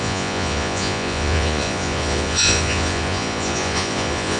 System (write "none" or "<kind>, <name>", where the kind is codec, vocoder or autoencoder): vocoder, Vocos